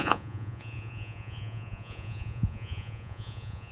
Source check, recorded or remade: remade